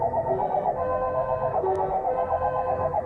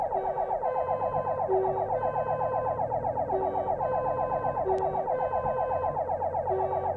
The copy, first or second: first